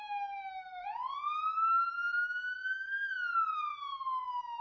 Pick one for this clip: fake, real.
real